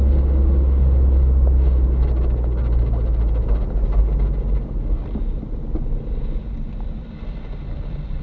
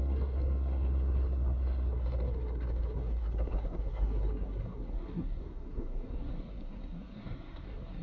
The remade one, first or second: second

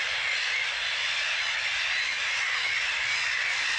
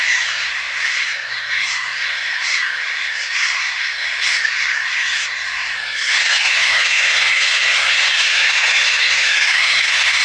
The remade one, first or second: second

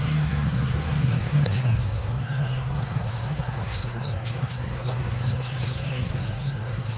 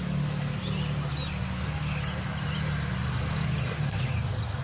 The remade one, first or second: first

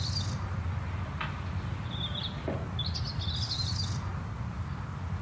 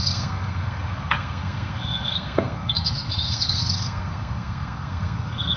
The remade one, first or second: second